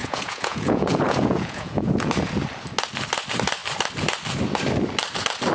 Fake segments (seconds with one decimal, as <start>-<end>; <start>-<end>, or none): 0.0-2.1